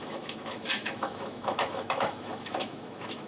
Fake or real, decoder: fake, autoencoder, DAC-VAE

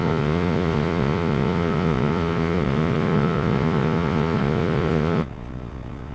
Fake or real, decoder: fake, vocoder, Vocos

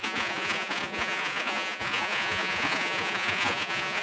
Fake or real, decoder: fake, vocoder, Vocos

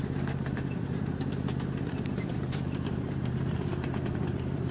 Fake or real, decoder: fake, vocoder, BigVGAN v2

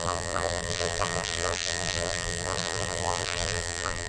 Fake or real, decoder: fake, vocoder, BigVGAN v2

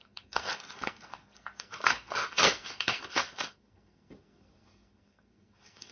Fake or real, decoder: fake, codec, SNAC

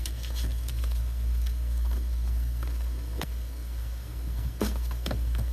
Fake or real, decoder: fake, codec, SNAC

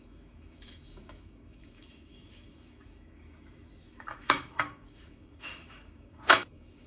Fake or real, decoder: fake, autoencoder, DAC-VAE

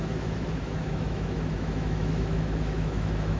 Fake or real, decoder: fake, autoencoder, DAC-VAE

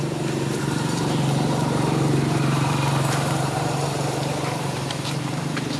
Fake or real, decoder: fake, vocoder, BigVGAN v2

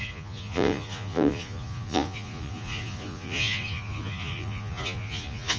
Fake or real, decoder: fake, vocoder, Vocos